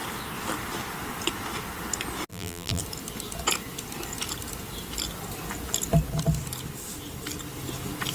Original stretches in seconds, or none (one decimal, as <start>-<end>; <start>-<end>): 0.0-2.3; 2.8-8.1